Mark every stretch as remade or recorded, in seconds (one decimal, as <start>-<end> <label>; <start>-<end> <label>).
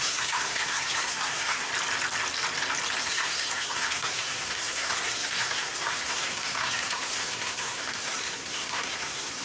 0.0-1.7 remade; 1.7-3.0 recorded; 3.0-9.4 remade